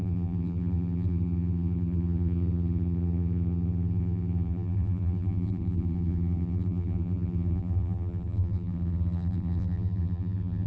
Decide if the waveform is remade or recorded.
remade